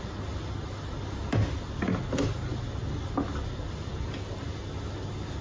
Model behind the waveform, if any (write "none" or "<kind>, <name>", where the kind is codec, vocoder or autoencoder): none